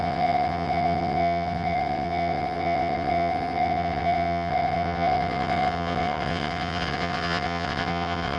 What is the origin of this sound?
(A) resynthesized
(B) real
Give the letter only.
A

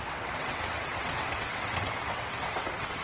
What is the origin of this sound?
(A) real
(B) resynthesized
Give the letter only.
B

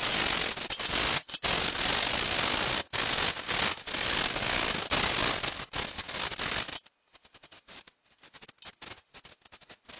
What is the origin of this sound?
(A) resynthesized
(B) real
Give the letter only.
B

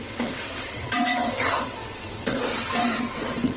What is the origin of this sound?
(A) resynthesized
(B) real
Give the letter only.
A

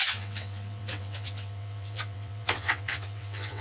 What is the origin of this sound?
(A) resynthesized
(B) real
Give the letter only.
A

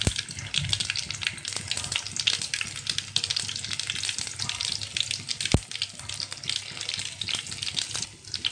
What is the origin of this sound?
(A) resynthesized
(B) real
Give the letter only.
B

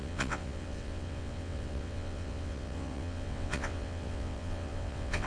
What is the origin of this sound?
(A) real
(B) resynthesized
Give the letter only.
B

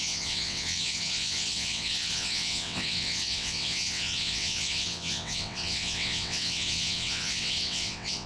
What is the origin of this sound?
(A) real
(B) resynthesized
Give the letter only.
B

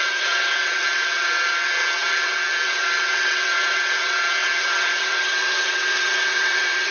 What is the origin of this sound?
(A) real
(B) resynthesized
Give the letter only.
B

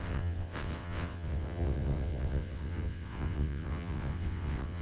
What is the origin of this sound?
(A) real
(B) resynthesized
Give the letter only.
B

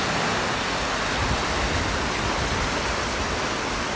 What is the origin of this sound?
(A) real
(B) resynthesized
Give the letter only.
A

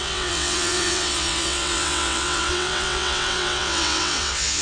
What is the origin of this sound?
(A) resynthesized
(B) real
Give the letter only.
A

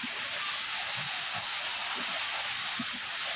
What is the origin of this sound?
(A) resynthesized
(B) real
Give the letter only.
B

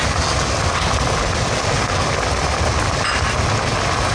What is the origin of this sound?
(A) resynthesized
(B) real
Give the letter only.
B